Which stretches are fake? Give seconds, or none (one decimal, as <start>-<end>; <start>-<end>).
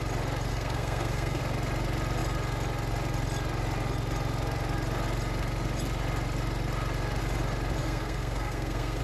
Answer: 0.5-1.4; 7.8-9.0